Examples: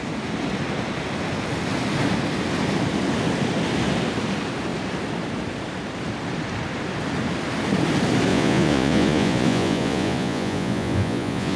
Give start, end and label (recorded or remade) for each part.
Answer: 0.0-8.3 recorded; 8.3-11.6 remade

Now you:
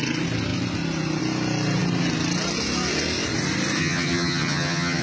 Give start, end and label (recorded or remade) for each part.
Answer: 0.0-3.8 recorded; 3.8-5.0 remade